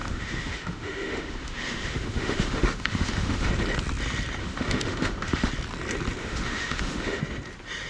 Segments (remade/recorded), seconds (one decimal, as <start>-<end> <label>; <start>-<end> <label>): 0.0-3.5 remade; 3.5-4.4 recorded; 4.4-5.5 remade; 5.5-6.2 recorded; 6.2-7.2 remade; 7.2-7.9 recorded